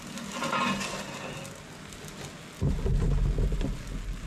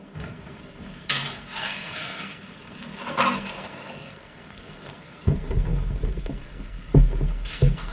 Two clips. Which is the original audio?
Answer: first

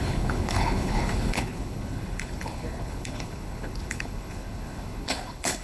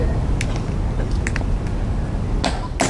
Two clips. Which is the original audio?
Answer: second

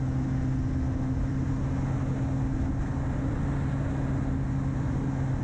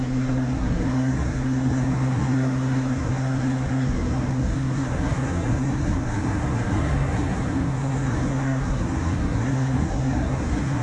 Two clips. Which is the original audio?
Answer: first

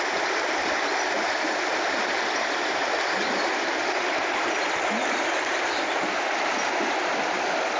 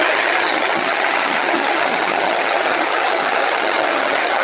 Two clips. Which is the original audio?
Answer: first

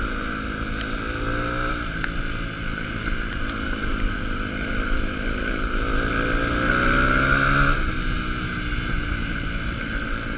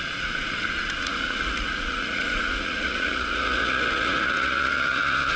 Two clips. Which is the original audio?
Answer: first